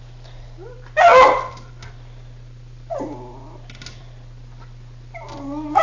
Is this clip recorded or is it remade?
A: recorded